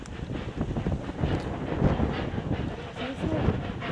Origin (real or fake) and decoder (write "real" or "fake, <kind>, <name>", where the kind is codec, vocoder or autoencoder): real